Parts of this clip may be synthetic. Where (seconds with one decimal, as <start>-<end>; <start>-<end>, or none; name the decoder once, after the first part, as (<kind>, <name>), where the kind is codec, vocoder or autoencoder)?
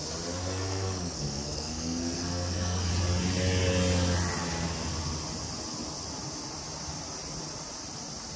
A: 0.4-2.9 (codec, SNAC)